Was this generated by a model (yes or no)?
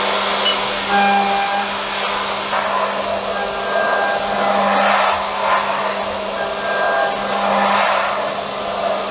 no